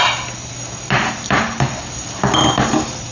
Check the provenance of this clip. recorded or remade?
recorded